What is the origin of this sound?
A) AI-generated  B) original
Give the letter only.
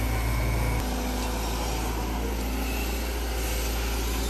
B